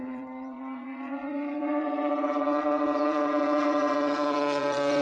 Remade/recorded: remade